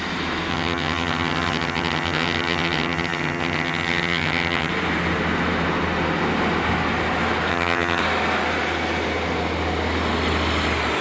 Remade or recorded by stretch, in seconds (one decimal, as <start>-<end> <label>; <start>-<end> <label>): 0.0-0.5 recorded; 0.5-4.7 remade; 4.7-7.5 recorded; 7.5-8.0 remade; 8.0-11.0 recorded